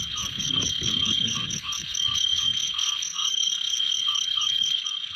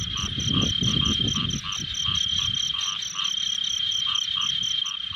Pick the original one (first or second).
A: second